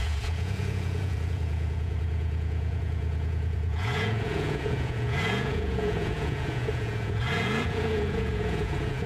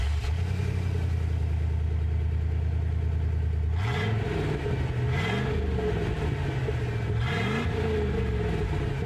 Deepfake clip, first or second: first